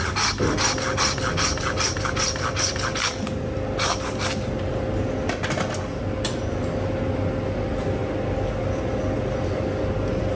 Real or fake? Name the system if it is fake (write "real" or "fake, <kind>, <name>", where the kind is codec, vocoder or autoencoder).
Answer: real